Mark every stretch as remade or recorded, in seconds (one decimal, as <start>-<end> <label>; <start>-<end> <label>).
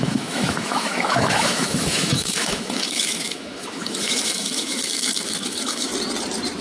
0.0-5.9 remade; 5.9-6.6 recorded